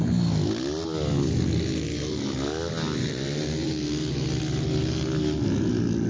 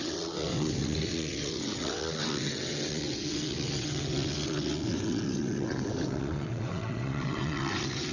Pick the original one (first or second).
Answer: first